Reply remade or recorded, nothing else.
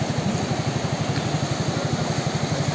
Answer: recorded